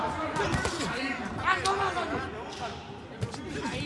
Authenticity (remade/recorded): recorded